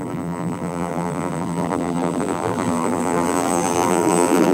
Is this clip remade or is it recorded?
remade